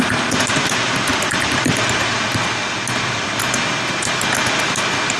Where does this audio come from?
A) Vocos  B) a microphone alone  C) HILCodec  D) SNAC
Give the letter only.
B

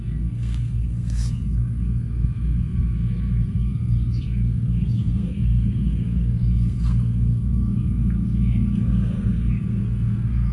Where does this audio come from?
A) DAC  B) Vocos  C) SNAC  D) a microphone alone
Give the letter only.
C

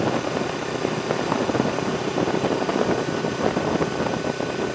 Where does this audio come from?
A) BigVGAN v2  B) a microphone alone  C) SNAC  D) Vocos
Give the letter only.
B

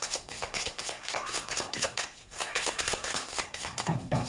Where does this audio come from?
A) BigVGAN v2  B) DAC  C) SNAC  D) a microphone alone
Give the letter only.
C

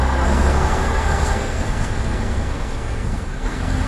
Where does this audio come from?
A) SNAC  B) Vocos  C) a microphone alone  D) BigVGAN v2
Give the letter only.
A